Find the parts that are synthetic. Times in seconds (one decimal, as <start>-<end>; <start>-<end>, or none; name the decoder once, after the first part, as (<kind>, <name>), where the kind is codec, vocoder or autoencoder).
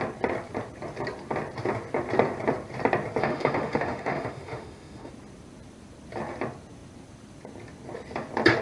3.2-5.1 (autoencoder, DAC-VAE)